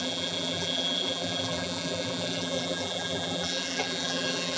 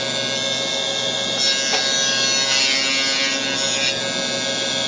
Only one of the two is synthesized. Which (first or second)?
first